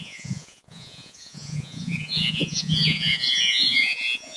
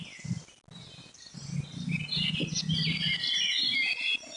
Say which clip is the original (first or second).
second